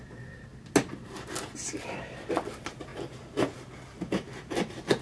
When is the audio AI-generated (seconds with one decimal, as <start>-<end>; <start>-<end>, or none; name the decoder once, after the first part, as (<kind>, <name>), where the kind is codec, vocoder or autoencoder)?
none